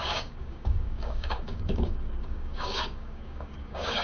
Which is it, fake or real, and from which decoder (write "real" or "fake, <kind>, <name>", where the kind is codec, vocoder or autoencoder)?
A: fake, codec, DAC